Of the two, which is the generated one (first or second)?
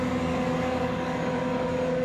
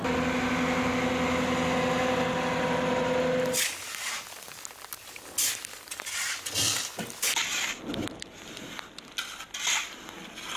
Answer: first